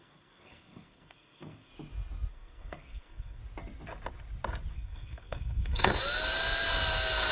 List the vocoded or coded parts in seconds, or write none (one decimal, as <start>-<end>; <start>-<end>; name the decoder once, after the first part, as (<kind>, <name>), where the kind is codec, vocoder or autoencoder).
0.0-1.7 (codec, SNAC); 2.3-3.4; 4.7-5.9